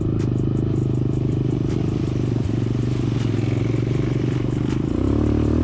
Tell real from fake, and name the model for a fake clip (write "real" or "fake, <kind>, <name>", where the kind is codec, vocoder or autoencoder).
real